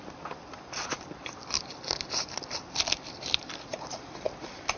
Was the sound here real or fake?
fake